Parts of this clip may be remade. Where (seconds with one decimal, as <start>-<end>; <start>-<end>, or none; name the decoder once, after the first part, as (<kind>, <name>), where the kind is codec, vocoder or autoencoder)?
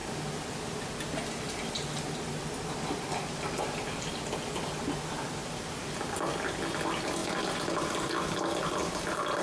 none